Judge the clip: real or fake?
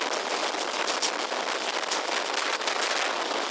real